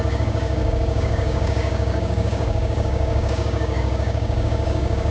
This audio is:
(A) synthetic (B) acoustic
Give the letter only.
A